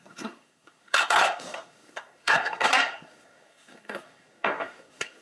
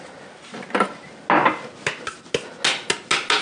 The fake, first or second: first